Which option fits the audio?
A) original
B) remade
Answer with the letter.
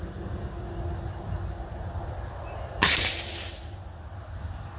A